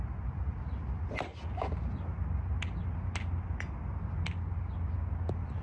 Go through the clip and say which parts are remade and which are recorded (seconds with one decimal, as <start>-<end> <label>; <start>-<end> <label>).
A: 0.0-5.6 recorded